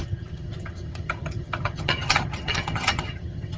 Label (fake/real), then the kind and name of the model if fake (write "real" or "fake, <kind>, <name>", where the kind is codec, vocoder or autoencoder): fake, vocoder, HiFi-GAN